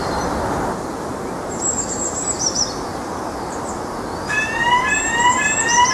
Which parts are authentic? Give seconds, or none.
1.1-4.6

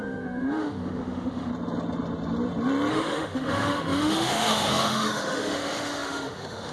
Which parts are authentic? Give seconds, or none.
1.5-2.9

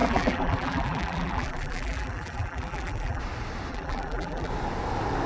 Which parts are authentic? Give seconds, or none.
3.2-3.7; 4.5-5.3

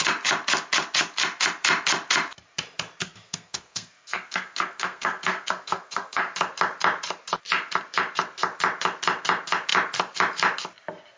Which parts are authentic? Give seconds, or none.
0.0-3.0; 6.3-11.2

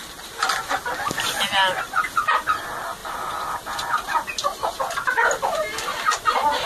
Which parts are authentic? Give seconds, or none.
0.8-3.0; 3.9-6.7

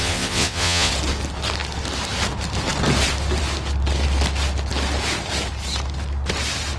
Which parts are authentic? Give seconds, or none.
0.9-6.8

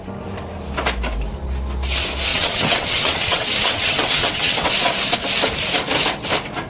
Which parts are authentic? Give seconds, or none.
0.0-2.3; 4.7-6.7

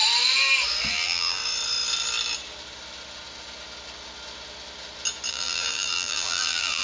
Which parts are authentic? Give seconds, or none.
0.0-0.9; 1.4-5.3